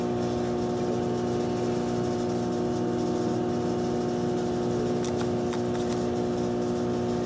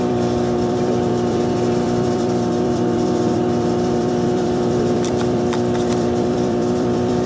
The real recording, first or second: first